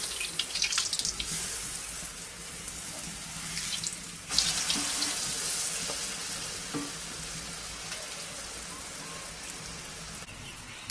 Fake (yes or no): no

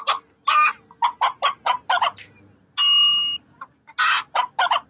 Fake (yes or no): no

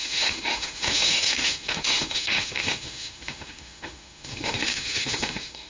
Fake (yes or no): yes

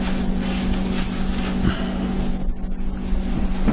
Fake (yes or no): no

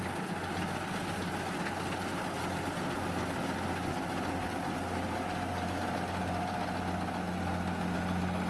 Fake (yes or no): no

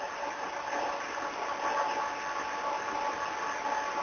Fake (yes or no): no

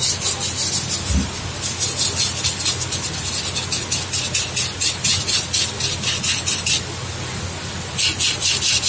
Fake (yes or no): no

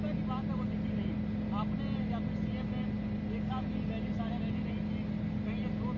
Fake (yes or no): no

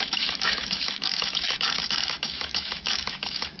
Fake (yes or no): yes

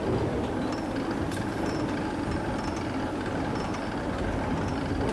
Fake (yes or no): yes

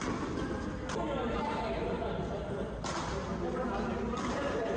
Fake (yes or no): no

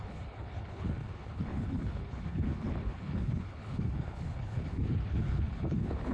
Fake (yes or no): yes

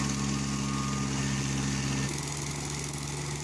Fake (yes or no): no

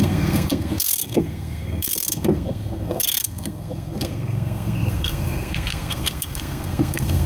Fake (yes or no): yes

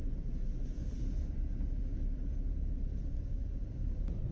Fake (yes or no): yes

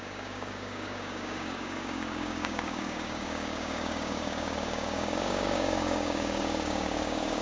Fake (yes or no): yes